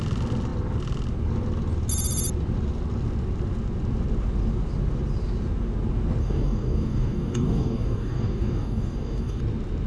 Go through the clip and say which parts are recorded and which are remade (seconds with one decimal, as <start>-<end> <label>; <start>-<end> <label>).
0.0-6.2 recorded; 6.2-9.4 remade; 9.4-9.9 recorded